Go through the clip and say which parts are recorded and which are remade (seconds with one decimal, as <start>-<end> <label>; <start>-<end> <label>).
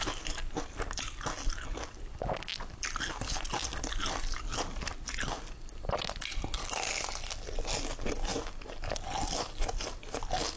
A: 0.0-10.6 recorded